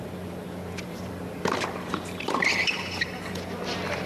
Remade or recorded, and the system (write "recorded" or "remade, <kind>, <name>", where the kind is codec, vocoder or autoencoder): remade, vocoder, BigVGAN v2